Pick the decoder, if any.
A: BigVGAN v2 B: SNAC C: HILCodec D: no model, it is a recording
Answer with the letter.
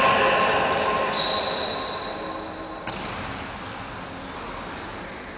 D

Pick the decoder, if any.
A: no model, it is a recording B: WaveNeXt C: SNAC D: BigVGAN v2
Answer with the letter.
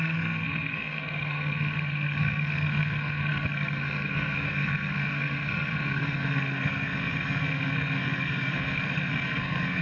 C